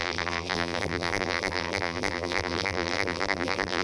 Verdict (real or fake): fake